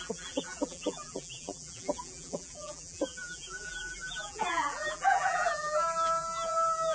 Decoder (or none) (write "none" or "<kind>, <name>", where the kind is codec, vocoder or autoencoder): vocoder, BigVGAN v2